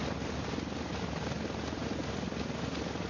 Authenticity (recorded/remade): recorded